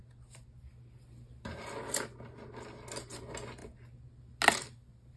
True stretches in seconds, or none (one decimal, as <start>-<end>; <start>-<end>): 0.0-5.2